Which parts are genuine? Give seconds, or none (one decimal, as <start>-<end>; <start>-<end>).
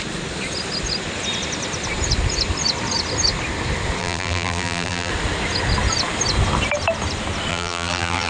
0.0-4.0; 5.1-7.5